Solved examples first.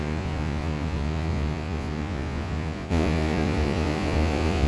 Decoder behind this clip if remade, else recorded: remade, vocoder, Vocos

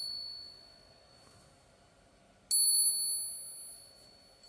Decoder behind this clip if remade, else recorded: recorded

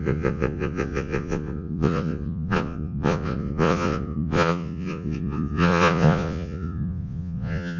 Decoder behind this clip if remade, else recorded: remade, vocoder, Vocos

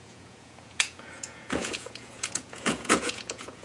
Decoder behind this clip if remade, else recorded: remade, vocoder, Vocos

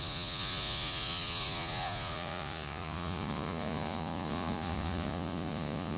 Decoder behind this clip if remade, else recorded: remade, vocoder, Vocos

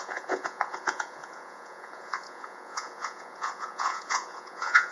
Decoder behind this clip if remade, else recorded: remade, vocoder, Vocos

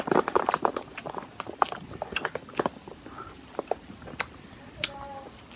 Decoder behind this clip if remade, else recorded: recorded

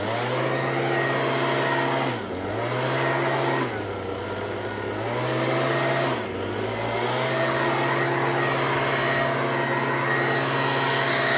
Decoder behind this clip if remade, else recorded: recorded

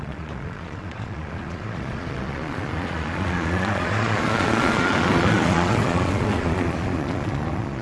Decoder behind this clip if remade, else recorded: remade, vocoder, Vocos